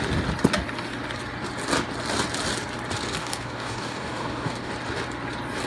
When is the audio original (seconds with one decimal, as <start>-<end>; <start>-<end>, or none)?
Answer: 0.0-3.2; 4.7-5.7